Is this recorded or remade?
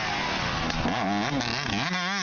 recorded